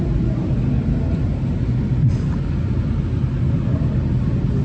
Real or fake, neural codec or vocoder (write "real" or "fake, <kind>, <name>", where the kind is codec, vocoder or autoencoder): real